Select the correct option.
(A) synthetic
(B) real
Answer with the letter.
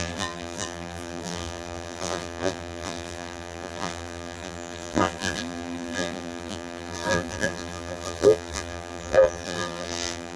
A